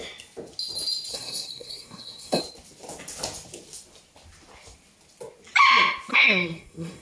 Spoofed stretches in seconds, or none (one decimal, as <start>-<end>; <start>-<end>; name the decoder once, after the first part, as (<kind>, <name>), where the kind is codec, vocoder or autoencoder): 1.1-2.4 (codec, SNAC); 6.1-7.0